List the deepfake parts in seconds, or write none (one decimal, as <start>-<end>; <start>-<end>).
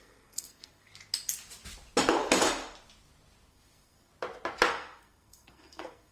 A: 0.0-0.9; 3.5-4.1; 4.7-6.1